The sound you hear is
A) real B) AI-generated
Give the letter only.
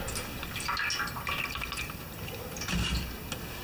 A